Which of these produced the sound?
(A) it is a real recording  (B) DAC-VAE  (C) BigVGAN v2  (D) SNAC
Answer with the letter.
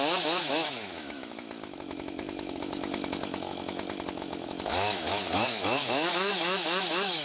B